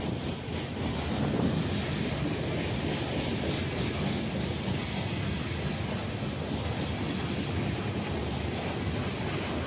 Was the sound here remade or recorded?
recorded